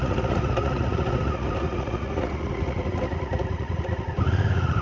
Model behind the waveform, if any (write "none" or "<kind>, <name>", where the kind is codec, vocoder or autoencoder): vocoder, Vocos